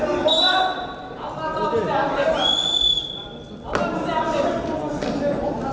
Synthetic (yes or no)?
no